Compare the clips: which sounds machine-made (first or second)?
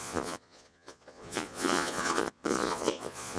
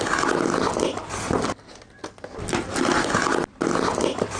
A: first